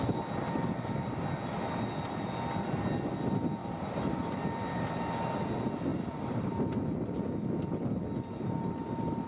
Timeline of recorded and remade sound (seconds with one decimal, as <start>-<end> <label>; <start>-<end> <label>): 0.0-3.6 recorded; 3.6-4.2 remade; 4.2-5.9 recorded; 5.9-6.5 remade; 6.5-9.3 recorded